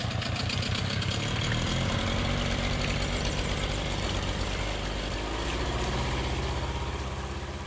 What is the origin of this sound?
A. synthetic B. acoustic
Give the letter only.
B